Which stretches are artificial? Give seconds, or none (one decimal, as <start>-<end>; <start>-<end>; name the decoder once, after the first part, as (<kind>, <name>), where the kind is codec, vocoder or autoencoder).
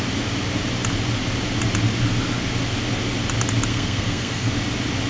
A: 3.7-4.5 (codec, SNAC)